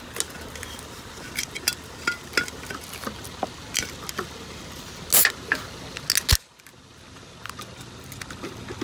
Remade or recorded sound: recorded